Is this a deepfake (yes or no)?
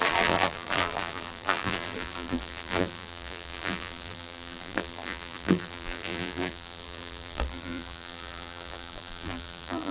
yes